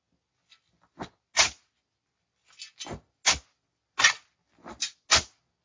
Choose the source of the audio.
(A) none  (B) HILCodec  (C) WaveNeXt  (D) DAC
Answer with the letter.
A